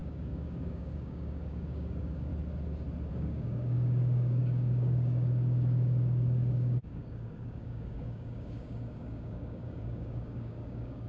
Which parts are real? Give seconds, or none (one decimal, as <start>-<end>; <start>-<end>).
2.3-3.1